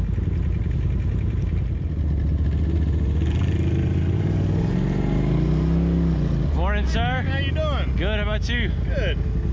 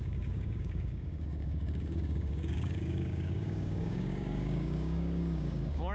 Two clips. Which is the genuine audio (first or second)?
first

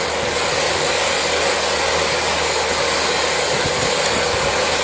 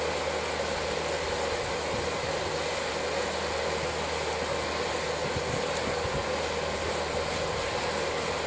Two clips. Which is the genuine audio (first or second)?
second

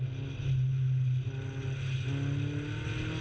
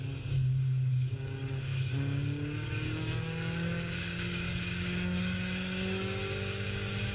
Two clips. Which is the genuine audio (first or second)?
first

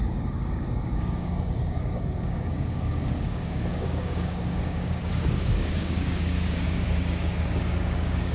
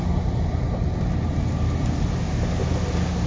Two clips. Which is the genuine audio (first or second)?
second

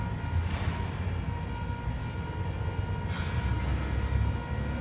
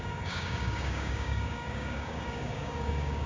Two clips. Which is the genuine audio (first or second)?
first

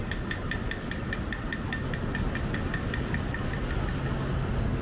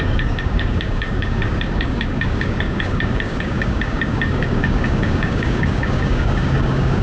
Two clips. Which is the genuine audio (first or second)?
first